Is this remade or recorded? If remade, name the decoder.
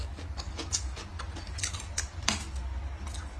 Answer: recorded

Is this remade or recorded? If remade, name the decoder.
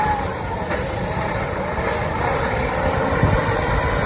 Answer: recorded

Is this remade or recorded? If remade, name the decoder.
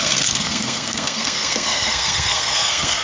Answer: remade, codec, SNAC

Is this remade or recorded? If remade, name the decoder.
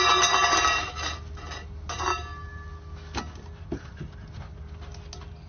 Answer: recorded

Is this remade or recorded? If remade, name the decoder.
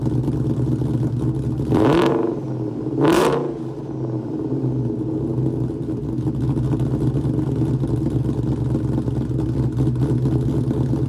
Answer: recorded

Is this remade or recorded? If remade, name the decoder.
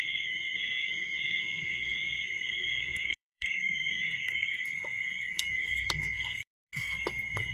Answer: remade, codec, SNAC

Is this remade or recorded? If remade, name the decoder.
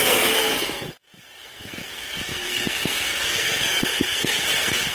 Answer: remade, codec, SNAC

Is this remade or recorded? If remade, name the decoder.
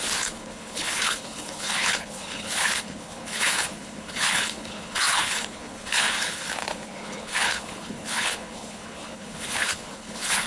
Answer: remade, codec, HILCodec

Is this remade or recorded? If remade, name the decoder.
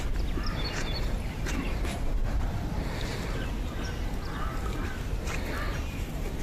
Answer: recorded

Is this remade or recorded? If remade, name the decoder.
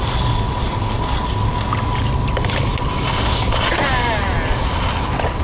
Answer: recorded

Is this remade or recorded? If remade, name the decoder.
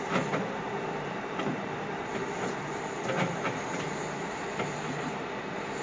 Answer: remade, vocoder, BigVGAN v2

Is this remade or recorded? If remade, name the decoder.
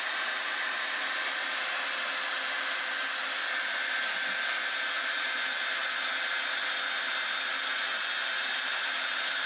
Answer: recorded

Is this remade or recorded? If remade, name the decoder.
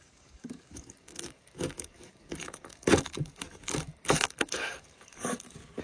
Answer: remade, codec, DAC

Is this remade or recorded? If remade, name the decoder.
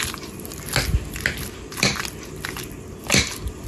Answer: recorded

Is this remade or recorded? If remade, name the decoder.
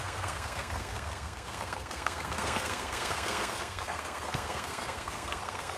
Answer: remade, codec, SNAC